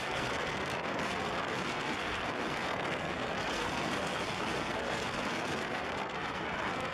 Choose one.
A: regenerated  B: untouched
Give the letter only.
A